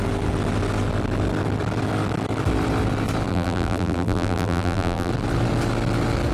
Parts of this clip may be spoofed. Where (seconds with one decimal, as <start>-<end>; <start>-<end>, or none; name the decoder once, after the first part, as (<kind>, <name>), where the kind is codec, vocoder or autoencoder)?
3.3-5.1 (vocoder, BigVGAN v2)